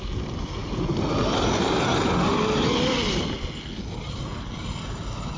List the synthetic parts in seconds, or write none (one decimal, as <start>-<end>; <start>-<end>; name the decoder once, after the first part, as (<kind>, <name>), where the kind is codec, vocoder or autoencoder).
none